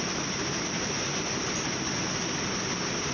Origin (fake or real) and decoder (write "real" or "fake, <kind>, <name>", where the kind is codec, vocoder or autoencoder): real